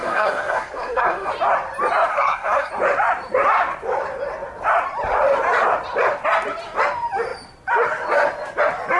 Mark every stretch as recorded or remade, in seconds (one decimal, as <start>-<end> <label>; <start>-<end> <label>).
0.0-1.3 remade; 1.3-2.1 recorded; 2.1-2.7 remade; 2.7-9.0 recorded